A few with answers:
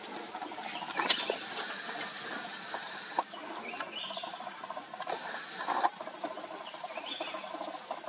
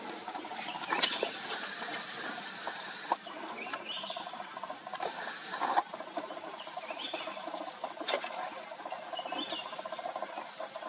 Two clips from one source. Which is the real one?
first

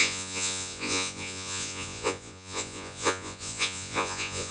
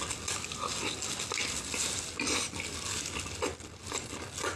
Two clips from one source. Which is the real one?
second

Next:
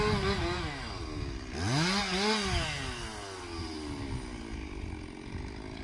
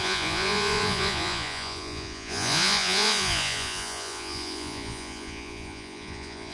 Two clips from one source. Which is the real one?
first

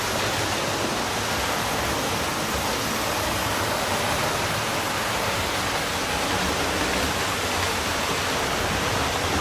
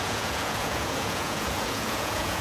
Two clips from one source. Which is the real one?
first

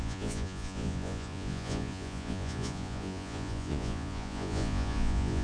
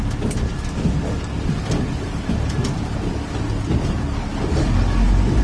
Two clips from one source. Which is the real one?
second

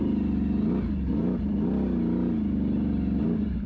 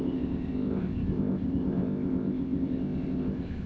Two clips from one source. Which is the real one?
first